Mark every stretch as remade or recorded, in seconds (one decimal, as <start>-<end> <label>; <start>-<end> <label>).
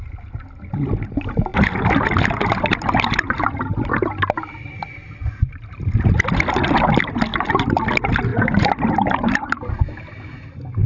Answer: 0.0-7.3 recorded; 7.3-7.8 remade; 7.8-8.3 recorded; 8.3-9.8 remade; 9.8-10.9 recorded